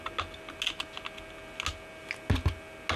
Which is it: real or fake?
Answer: real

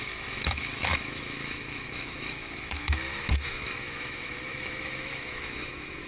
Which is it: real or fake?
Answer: fake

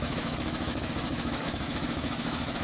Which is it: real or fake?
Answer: fake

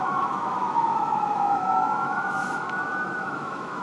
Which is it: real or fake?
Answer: fake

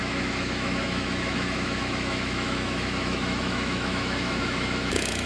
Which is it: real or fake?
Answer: fake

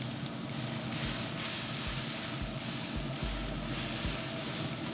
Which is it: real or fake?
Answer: real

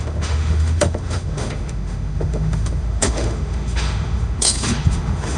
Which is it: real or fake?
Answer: fake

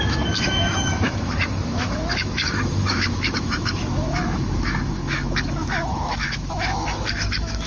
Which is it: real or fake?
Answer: fake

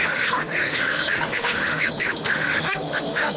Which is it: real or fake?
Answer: fake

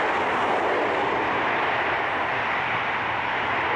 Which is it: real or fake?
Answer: real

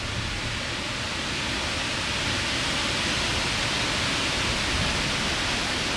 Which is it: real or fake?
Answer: real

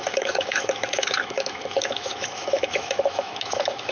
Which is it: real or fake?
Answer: fake